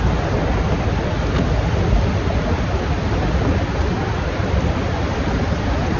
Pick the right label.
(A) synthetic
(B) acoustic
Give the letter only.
B